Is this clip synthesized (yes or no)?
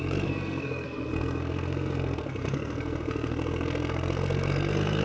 yes